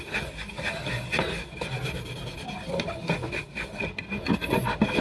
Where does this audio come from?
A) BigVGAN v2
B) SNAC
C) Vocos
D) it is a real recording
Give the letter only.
D